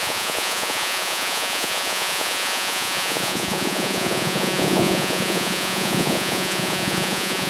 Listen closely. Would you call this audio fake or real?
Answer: fake